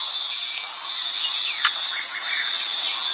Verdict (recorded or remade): recorded